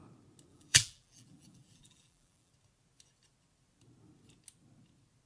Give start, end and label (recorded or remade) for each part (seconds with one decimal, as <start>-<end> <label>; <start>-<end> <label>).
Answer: 0.0-0.5 recorded; 0.5-2.5 remade; 2.5-5.3 recorded